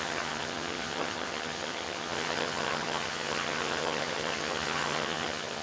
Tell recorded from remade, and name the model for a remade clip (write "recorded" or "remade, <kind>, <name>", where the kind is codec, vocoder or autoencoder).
remade, vocoder, HiFi-GAN